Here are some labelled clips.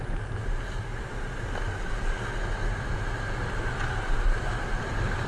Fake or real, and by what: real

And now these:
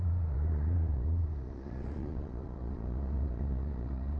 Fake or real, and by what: fake, vocoder, Vocos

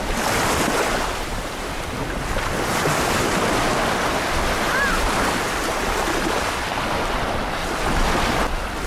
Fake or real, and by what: real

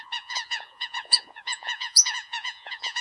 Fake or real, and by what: fake, vocoder, Vocos